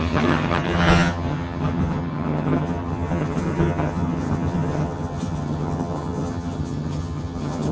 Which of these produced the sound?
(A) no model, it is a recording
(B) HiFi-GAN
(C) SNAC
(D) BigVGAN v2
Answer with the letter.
B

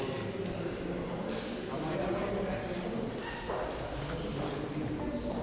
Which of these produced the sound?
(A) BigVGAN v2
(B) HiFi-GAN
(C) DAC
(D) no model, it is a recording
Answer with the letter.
D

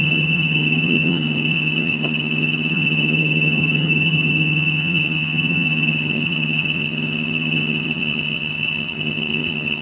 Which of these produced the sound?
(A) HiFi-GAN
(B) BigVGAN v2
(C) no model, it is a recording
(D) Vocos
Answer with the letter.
A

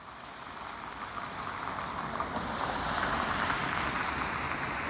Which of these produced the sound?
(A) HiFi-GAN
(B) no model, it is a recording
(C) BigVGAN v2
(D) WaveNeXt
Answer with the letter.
B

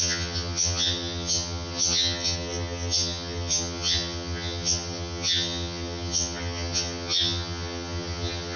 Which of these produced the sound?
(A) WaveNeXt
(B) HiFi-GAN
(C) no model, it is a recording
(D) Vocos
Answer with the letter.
B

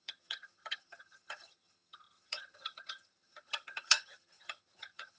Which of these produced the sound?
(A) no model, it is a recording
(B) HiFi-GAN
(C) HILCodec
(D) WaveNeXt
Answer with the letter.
B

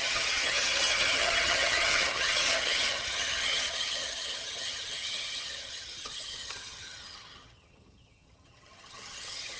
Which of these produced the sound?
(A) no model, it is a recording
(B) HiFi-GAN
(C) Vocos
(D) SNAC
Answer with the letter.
B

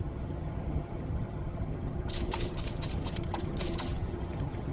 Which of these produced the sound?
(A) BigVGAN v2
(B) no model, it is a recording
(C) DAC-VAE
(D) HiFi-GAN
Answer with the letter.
D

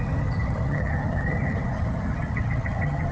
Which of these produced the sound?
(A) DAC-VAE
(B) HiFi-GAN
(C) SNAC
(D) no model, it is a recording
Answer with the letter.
B